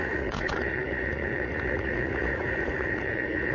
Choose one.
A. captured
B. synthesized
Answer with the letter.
B